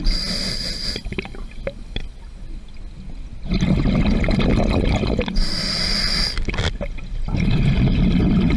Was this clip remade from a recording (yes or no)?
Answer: no